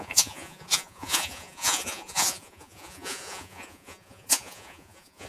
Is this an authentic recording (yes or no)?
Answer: no